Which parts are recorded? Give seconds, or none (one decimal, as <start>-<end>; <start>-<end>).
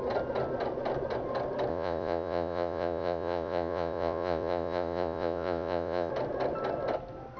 0.0-1.7; 6.1-7.4